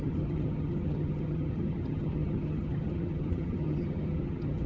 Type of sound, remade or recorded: remade